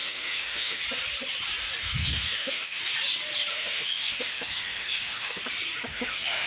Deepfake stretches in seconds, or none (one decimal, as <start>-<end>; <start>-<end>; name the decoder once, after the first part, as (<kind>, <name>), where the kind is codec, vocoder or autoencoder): 0.0-0.8 (autoencoder, DAC-VAE); 1.8-2.8; 3.5-5.4; 5.9-6.5